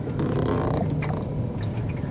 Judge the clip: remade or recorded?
recorded